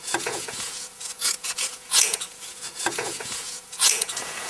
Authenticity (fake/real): fake